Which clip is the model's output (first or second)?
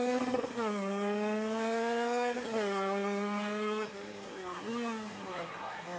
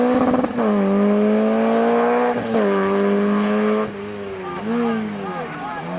first